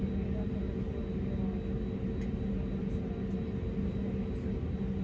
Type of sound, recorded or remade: recorded